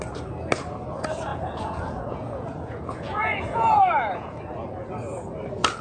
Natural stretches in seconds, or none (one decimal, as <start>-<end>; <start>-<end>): 0.0-1.3; 4.4-5.8